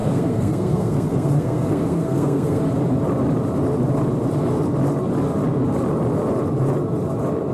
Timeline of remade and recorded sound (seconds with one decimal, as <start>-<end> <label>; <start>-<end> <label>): 0.0-2.6 remade; 2.6-7.5 recorded